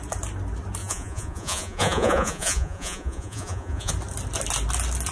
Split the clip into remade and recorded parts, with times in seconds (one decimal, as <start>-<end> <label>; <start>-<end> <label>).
0.0-0.8 recorded; 0.8-3.9 remade; 3.9-5.1 recorded